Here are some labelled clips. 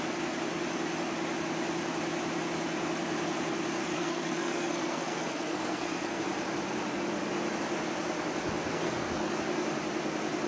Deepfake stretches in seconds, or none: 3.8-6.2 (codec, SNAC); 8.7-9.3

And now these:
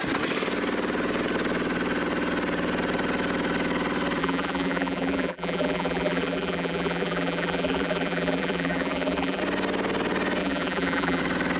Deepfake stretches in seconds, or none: 4.2-9.4 (vocoder, BigVGAN v2); 10.4-11.2

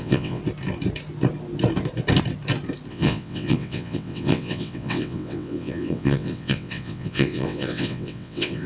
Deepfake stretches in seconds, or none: 0.0-0.4 (vocoder, WaveNeXt); 2.9-8.7

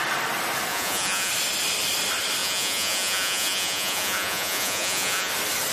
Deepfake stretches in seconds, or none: 0.7-1.3 (vocoder, Vocos); 2.4-5.3

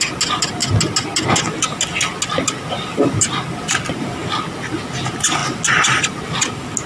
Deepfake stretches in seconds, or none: none